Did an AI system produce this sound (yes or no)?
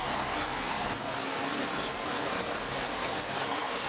yes